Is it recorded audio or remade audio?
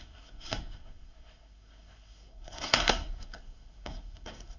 remade